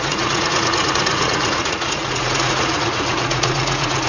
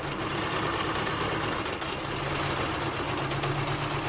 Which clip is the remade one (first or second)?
first